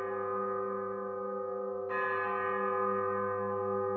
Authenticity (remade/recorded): recorded